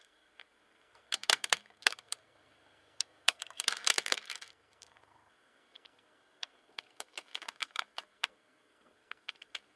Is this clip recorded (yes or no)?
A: no